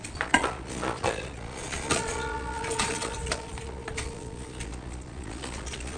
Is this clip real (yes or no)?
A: no